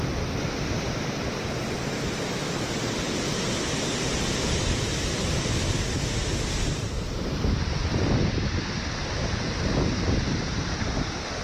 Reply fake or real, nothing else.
real